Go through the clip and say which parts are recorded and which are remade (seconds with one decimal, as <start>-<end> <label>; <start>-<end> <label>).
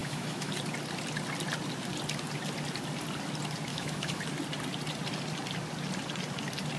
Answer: 0.0-0.5 remade; 0.5-3.7 recorded; 3.7-4.2 remade; 4.2-6.8 recorded